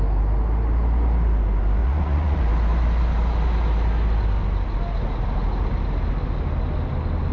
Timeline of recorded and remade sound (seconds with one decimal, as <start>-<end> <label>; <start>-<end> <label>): 0.0-1.8 recorded; 1.8-2.4 remade; 2.4-7.3 recorded